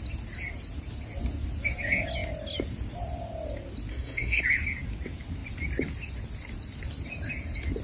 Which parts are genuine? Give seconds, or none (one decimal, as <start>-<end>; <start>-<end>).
0.0-3.9; 4.4-7.8